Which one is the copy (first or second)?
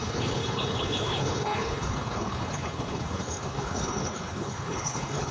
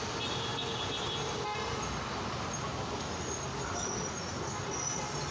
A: first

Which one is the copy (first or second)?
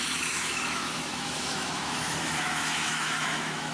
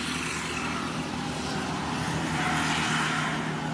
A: first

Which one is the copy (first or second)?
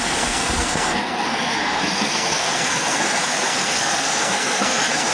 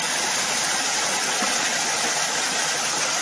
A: first